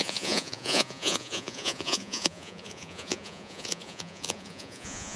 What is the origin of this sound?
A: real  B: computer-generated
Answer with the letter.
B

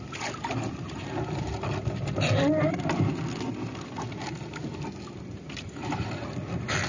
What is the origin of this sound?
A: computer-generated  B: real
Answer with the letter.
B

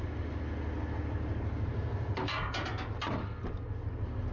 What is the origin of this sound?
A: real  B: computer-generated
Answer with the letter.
A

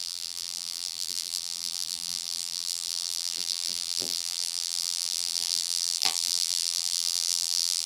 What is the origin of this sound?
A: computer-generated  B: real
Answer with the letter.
A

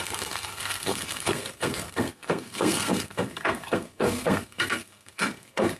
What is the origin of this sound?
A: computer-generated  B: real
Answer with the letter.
A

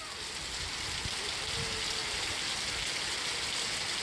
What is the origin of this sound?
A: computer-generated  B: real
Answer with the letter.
B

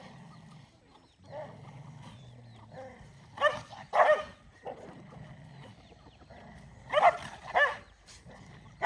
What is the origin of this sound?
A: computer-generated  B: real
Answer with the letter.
B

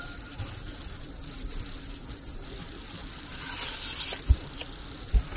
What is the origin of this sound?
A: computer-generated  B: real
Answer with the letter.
B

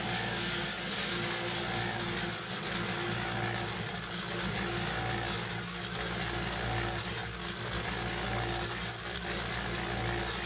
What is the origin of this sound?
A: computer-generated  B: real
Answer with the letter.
B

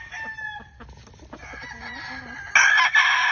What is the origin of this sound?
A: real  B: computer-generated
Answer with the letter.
A